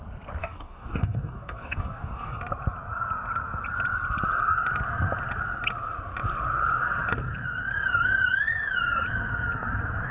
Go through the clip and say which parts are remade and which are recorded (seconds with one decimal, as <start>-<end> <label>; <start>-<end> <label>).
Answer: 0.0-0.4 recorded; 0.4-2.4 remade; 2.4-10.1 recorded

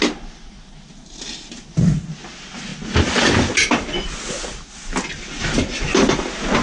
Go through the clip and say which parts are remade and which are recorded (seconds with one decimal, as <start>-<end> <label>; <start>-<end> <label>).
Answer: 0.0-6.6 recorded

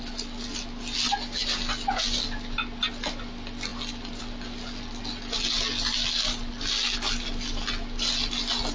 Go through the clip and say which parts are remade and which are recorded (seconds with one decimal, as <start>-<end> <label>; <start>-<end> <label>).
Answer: 0.0-8.7 recorded